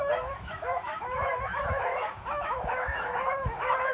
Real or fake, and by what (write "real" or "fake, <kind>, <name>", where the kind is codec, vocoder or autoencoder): fake, autoencoder, DAC-VAE